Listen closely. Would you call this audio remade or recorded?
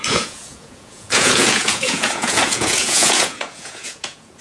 remade